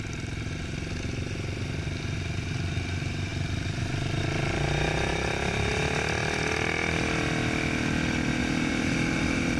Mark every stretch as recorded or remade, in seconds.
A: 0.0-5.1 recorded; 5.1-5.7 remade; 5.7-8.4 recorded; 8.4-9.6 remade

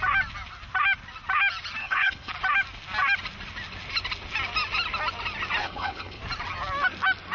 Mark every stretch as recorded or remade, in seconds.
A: 0.0-1.8 recorded; 1.8-2.3 remade; 2.3-5.6 recorded; 5.6-6.2 remade; 6.2-7.3 recorded

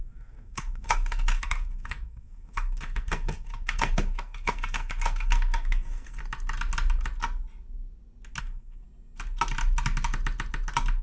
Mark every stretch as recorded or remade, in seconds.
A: 0.0-6.2 remade; 6.2-8.4 recorded; 8.4-8.8 remade; 8.8-11.0 recorded

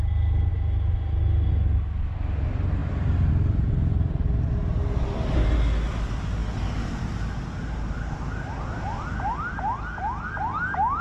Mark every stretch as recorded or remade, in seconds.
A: 0.0-0.5 recorded; 0.5-1.5 remade; 1.5-11.0 recorded

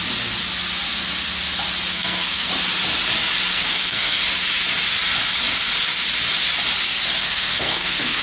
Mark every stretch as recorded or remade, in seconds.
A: 0.0-1.9 recorded; 1.9-2.5 remade; 2.5-3.5 recorded; 3.5-4.2 remade; 4.2-7.2 recorded; 7.2-8.2 remade

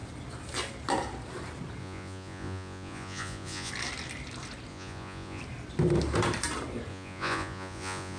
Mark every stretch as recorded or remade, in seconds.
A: 0.0-1.8 recorded; 1.8-3.7 remade; 3.7-4.7 recorded; 4.7-5.4 remade; 5.4-6.9 recorded; 6.9-8.2 remade